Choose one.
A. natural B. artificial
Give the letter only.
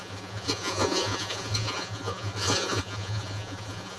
B